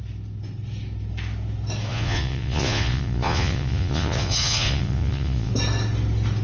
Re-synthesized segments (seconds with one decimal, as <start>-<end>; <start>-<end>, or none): 1.9-5.5